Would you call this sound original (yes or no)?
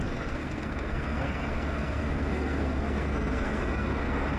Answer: no